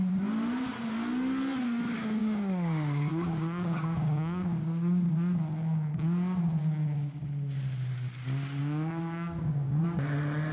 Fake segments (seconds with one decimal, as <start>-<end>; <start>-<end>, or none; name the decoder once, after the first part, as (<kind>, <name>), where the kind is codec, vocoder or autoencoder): 2.2-5.1 (codec, DAC); 6.6-7.2; 8.6-9.8